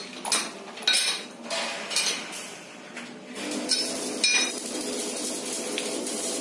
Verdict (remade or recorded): recorded